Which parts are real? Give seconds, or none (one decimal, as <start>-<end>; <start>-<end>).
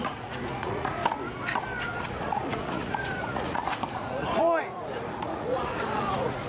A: 1.0-1.8